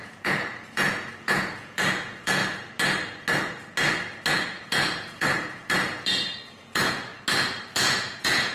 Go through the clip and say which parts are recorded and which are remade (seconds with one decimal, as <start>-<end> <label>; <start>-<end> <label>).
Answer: 0.0-2.4 remade; 2.4-4.3 recorded; 4.3-7.1 remade; 7.1-7.7 recorded; 7.7-8.5 remade